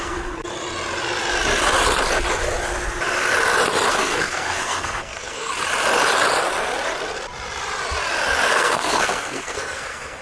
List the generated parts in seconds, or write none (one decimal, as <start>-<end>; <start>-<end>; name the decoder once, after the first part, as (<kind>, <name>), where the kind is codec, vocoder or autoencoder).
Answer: 0.0-0.5 (codec, SNAC); 3.9-5.5; 8.5-10.2